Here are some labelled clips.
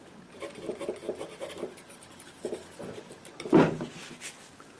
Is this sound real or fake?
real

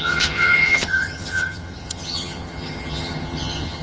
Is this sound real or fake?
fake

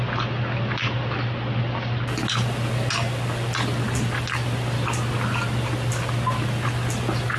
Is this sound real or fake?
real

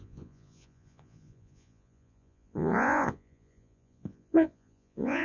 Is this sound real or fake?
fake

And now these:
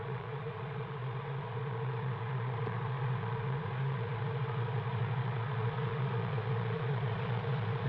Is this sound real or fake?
fake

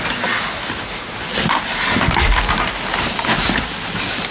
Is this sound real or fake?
real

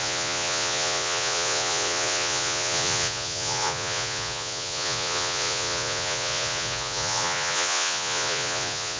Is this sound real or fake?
fake